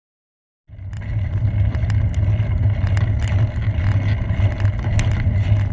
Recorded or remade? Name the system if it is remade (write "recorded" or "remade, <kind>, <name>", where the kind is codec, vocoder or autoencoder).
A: recorded